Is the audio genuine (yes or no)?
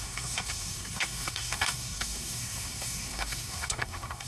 no